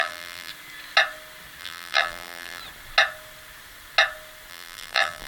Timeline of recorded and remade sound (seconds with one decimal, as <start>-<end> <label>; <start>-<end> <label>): 0.0-0.5 remade; 0.5-1.6 recorded; 1.6-2.6 remade; 2.6-4.5 recorded; 4.5-5.3 remade